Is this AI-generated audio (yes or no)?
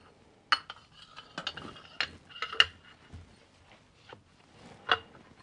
no